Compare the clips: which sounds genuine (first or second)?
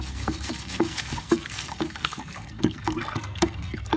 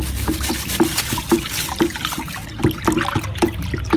second